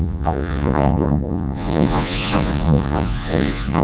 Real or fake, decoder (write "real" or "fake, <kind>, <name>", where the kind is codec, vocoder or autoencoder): fake, vocoder, Vocos